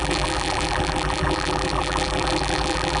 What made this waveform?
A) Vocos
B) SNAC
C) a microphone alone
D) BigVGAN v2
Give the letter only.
D